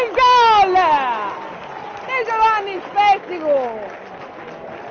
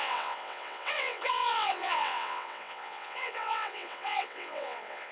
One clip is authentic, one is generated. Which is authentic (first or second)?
first